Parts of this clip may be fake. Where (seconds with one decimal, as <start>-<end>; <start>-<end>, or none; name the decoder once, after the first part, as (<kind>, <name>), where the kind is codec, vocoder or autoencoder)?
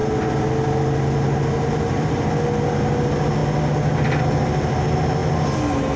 none